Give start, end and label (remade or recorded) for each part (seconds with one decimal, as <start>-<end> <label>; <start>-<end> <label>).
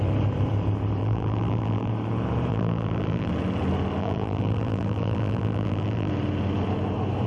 0.0-1.0 recorded; 1.0-1.9 remade; 1.9-2.5 recorded; 2.5-3.3 remade; 3.3-4.0 recorded; 4.0-6.1 remade; 6.1-7.3 recorded